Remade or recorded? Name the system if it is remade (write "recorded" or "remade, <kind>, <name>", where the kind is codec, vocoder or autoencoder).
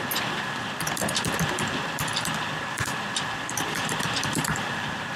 remade, vocoder, BigVGAN v2